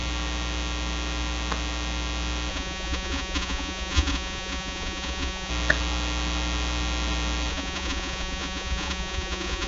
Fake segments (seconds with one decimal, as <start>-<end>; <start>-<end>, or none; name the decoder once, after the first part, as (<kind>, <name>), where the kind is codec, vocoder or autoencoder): 2.5-5.5 (vocoder, Vocos); 7.5-9.7